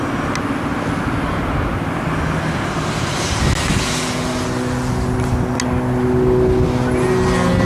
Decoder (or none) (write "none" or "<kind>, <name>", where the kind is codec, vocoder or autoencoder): none